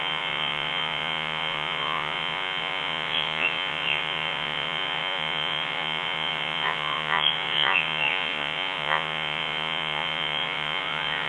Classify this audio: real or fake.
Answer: fake